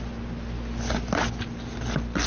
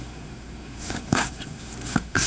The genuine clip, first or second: first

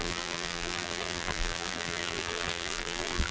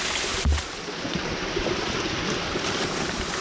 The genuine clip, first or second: second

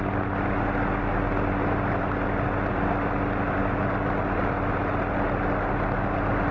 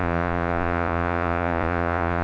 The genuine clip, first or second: first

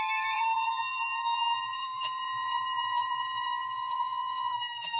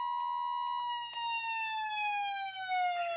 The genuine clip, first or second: second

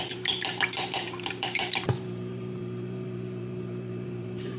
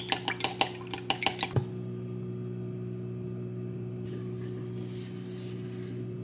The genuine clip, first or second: second